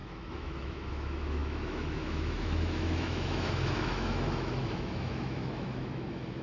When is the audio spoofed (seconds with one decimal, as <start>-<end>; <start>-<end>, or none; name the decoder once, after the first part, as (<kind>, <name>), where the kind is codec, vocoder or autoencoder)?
0.0-6.4 (autoencoder, DAC-VAE)